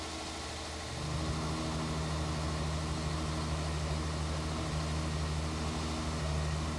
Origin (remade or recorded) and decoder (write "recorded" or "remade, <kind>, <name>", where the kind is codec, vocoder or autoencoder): recorded